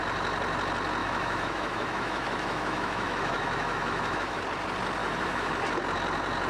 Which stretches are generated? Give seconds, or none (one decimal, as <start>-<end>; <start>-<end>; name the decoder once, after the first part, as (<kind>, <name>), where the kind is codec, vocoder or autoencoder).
1.0-4.4 (autoencoder, DAC-VAE); 5.0-5.5